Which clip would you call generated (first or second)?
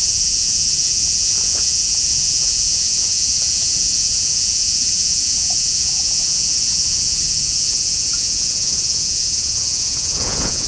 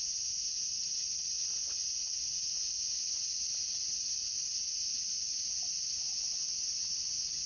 first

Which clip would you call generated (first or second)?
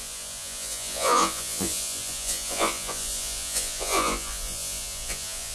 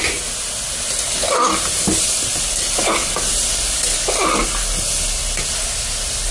first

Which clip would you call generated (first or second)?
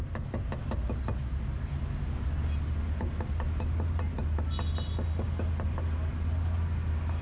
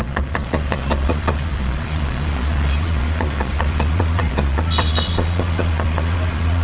second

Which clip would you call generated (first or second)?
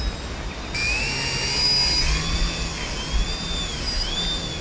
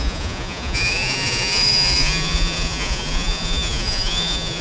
second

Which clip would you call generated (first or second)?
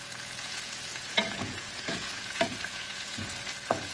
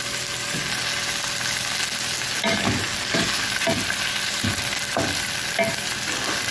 first